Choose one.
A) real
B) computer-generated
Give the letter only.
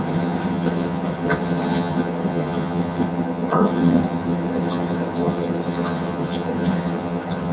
B